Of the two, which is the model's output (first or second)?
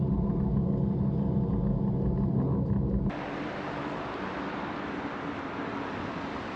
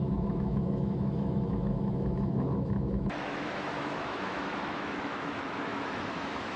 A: second